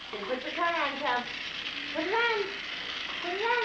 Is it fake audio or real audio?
real